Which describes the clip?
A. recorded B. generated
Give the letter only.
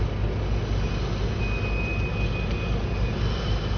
A